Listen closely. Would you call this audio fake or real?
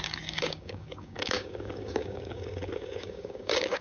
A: fake